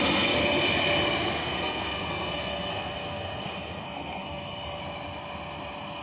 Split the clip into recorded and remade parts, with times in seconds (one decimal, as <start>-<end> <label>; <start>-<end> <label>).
0.0-1.4 recorded; 1.4-4.8 remade; 4.8-6.0 recorded